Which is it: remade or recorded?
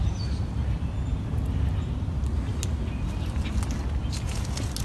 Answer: recorded